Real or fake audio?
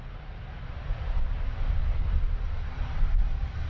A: real